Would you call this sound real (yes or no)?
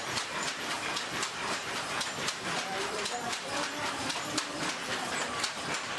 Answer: no